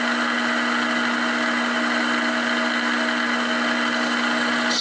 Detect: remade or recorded recorded